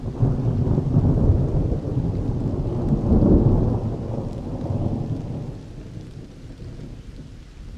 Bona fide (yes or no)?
yes